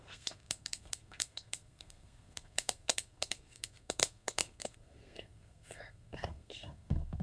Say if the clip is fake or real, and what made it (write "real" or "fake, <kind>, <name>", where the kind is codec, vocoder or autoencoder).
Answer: fake, codec, SNAC